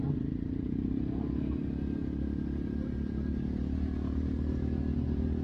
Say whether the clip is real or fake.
real